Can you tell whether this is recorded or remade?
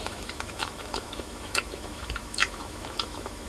remade